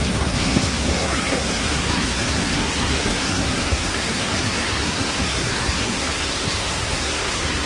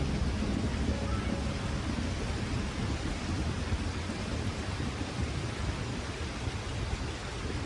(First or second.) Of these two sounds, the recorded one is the second